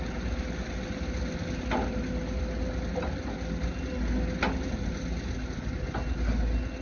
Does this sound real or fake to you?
real